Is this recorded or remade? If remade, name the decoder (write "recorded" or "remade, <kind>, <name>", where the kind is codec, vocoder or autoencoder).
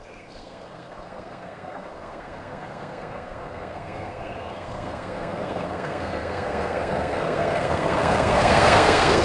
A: remade, codec, SNAC